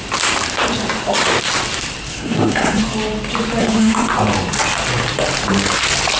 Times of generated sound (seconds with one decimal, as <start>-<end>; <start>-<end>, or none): 2.1-2.8; 3.6-4.1